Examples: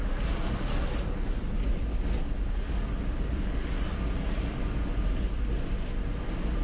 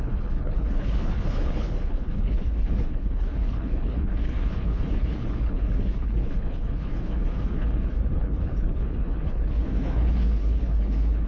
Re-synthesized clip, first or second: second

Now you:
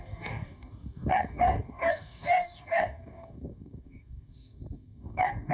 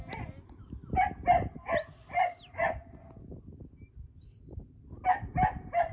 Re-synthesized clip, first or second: first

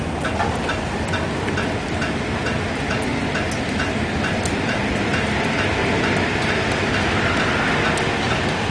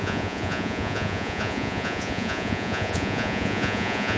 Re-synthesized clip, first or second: second